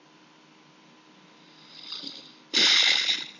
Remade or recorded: recorded